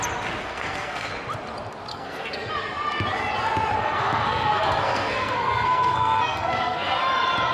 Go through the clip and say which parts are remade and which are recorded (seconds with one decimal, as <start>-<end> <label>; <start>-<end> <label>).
0.0-0.4 recorded; 0.4-1.1 remade; 1.1-1.9 recorded; 1.9-2.5 remade; 2.5-3.8 recorded; 3.8-7.0 remade; 7.0-7.5 recorded